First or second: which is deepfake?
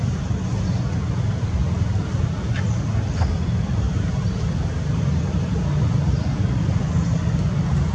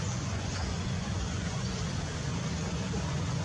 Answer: second